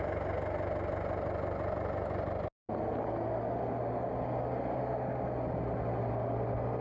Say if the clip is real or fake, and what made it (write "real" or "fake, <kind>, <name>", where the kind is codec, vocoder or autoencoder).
real